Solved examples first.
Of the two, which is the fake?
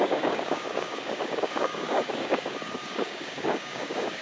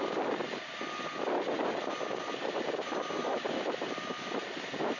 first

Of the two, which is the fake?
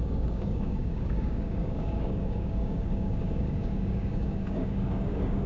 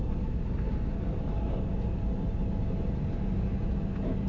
first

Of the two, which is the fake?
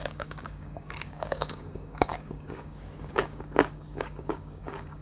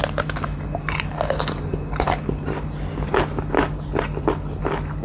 first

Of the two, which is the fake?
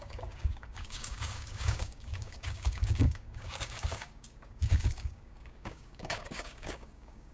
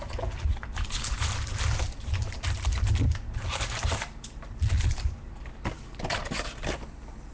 first